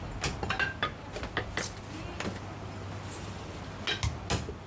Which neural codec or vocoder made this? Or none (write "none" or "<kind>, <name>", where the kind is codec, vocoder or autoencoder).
none